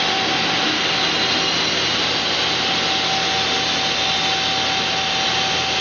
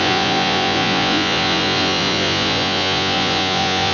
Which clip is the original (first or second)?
first